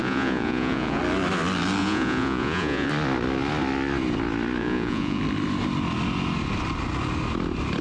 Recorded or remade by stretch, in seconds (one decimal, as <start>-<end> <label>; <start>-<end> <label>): 0.0-1.0 remade; 1.0-1.8 recorded; 1.8-2.9 remade; 2.9-4.6 recorded; 4.6-5.2 remade; 5.2-7.8 recorded